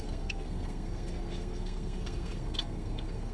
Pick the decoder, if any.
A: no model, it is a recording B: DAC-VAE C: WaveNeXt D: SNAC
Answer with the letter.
D